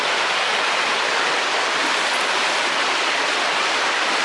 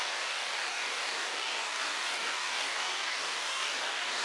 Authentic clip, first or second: first